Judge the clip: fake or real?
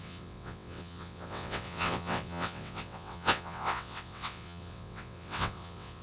fake